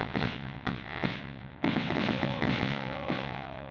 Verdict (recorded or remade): remade